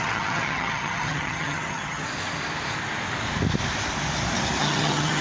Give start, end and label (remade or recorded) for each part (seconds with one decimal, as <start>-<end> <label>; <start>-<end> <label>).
0.0-2.0 remade; 2.0-4.6 recorded; 4.6-5.2 remade